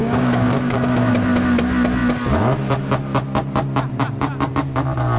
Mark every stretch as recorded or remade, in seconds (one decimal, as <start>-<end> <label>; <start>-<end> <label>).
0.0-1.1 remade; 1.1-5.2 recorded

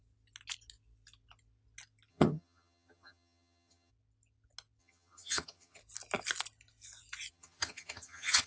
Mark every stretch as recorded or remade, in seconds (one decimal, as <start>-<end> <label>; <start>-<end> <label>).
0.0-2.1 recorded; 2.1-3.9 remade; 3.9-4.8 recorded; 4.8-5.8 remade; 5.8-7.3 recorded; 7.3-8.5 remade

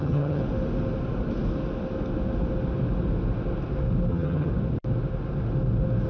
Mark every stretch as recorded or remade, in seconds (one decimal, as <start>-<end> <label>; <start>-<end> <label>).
0.0-0.4 remade; 0.4-4.1 recorded; 4.1-4.5 remade; 4.5-6.1 recorded

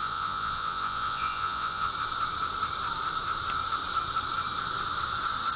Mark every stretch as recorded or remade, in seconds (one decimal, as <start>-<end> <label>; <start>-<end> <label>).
0.0-1.9 remade; 1.9-5.6 recorded

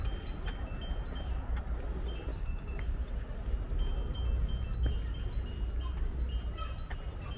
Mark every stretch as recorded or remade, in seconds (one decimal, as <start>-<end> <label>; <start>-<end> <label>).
0.0-2.3 recorded; 2.3-3.0 remade; 3.0-7.4 recorded